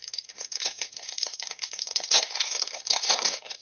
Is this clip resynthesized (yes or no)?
yes